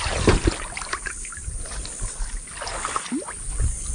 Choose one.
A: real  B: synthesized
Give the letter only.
A